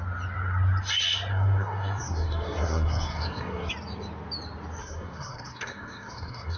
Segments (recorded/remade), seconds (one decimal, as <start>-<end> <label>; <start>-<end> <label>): 0.0-1.3 recorded; 1.3-3.7 remade; 3.7-4.8 recorded; 4.8-6.6 remade